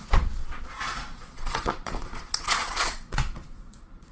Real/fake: fake